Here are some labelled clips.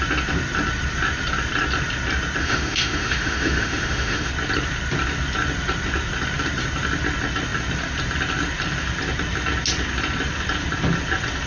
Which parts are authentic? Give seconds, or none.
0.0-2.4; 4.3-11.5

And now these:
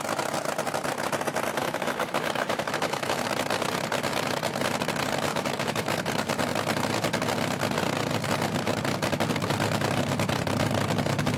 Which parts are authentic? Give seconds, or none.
0.0-1.6; 3.2-5.3; 6.1-11.4

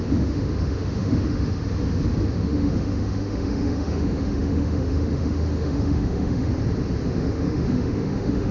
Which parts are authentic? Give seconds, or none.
1.6-2.3; 6.5-7.1

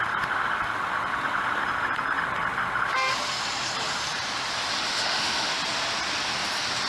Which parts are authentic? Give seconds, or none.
0.0-4.8; 5.5-6.9